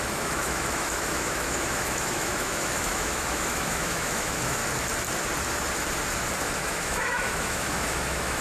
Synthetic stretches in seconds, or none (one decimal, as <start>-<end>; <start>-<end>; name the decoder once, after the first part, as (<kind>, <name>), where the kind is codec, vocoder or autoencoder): 0.0-4.6 (autoencoder, DAC-VAE); 6.4-8.4